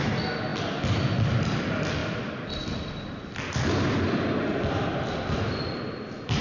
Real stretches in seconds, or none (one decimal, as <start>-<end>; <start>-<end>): 0.0-6.4